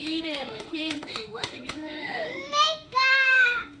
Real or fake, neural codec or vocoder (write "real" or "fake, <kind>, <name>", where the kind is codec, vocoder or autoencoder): fake, autoencoder, DAC-VAE